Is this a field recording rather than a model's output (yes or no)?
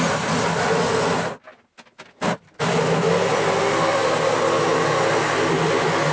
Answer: yes